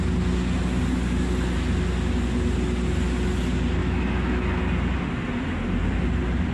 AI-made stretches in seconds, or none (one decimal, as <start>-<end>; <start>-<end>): 3.8-4.6